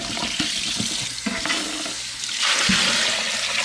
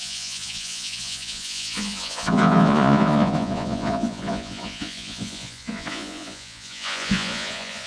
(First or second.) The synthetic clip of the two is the second